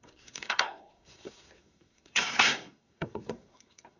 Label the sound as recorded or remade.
remade